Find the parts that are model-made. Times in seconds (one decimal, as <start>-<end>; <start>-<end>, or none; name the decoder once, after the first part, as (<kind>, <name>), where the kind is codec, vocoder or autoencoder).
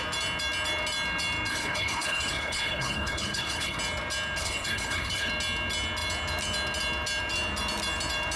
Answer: 1.5-3.8 (codec, HILCodec); 4.4-5.3